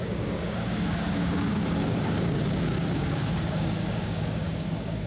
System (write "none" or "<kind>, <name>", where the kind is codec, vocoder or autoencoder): codec, DAC